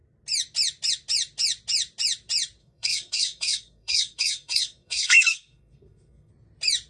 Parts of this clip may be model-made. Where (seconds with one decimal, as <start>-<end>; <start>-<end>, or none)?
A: 2.6-6.3